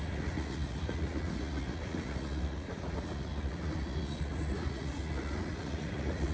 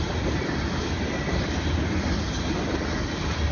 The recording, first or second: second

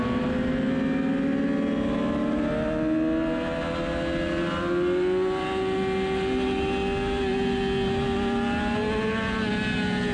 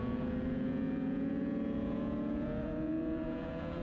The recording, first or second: first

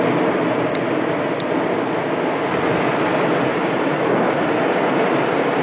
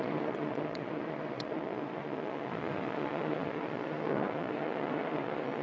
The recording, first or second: first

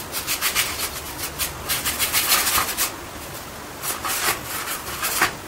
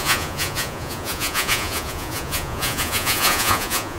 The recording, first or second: first